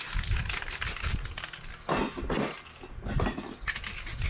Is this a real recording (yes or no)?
yes